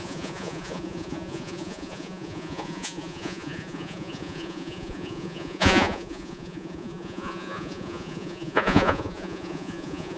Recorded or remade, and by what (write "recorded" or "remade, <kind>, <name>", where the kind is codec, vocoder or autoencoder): remade, vocoder, Vocos